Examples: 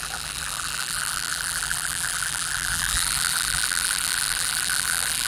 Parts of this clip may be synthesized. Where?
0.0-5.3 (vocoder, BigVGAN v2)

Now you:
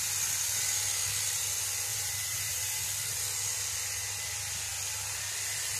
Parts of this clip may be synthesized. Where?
1.9-2.8 (vocoder, BigVGAN v2)

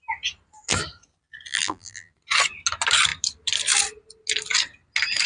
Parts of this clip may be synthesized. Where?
1.5-2.1 (vocoder, BigVGAN v2)

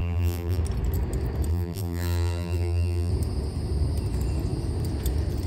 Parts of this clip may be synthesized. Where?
0.0-0.6 (vocoder, BigVGAN v2); 1.5-3.1